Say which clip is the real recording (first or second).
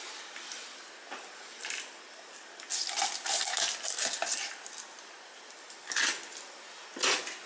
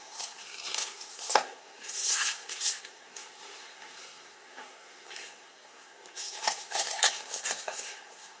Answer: first